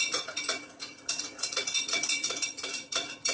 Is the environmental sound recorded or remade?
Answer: remade